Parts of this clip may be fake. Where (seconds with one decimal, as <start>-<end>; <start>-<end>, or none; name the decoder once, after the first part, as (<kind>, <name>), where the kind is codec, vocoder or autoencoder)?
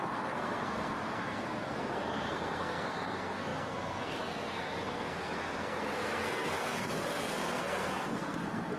0.0-8.8 (codec, SNAC)